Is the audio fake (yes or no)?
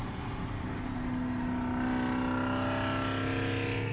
no